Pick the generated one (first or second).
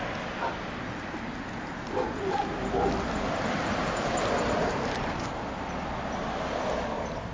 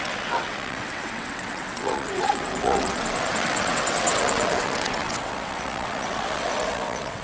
second